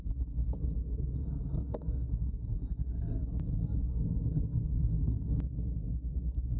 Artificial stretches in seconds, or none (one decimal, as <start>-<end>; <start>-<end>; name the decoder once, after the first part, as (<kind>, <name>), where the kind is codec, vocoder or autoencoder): 0.8-3.2 (codec, SNAC); 3.9-5.3